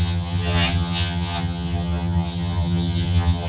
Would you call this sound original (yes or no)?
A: no